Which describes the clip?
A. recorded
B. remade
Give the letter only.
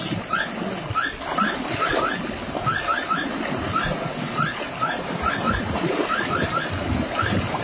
A